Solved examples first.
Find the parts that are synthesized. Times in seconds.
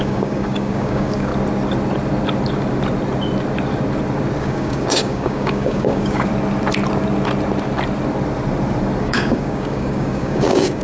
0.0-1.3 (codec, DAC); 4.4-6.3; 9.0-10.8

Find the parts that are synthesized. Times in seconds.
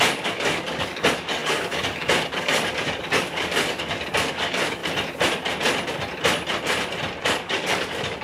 0.0-4.8 (codec, DAC); 7.2-8.2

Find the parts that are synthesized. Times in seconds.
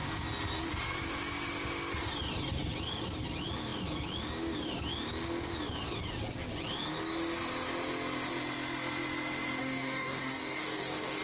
9.6-11.2 (codec, DAC)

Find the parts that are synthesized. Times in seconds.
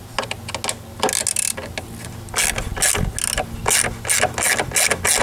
none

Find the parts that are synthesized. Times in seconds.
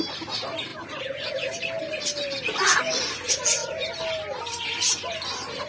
none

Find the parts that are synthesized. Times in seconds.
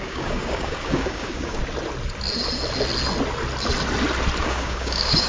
0.0-1.6 (codec, DAC); 4.4-5.3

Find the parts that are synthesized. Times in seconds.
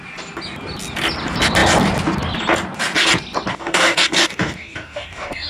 3.5-5.5 (codec, DAC)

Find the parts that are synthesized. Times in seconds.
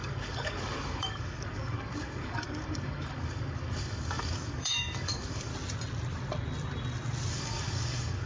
0.0-5.5 (codec, DAC); 7.3-8.3